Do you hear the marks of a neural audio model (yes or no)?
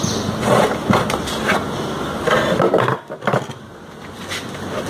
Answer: no